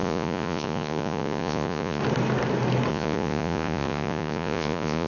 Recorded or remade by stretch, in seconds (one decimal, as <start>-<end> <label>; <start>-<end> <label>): 0.0-2.0 remade; 2.0-2.9 recorded; 2.9-5.1 remade